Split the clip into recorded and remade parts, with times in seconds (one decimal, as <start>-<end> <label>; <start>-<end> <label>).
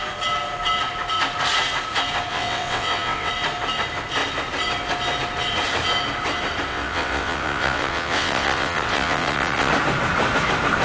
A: 0.0-2.3 recorded; 2.3-3.3 remade; 3.3-6.7 recorded; 6.7-9.7 remade; 9.7-10.8 recorded